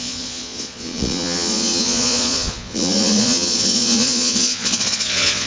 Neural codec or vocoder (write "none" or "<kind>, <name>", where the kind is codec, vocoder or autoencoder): vocoder, Vocos